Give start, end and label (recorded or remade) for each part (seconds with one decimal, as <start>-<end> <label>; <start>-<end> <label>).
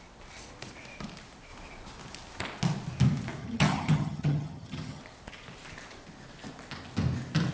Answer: 0.0-3.4 recorded; 3.4-5.0 remade; 5.0-7.5 recorded